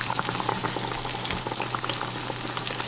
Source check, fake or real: real